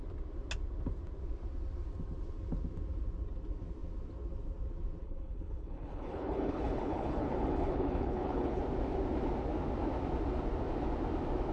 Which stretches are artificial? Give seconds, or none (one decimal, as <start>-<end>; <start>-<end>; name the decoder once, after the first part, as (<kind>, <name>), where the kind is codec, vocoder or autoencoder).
5.0-8.6 (codec, HILCodec)